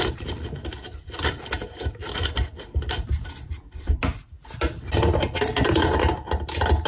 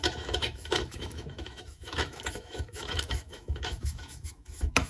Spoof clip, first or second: second